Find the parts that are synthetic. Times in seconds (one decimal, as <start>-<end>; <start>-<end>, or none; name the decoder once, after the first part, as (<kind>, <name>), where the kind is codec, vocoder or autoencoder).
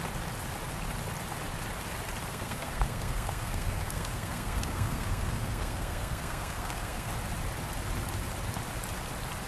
2.3-7.1 (codec, SNAC)